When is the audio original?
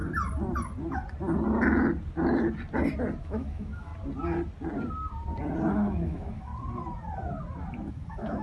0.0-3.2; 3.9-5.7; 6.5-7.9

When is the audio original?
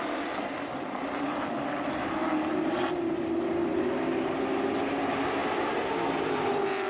0.0-6.9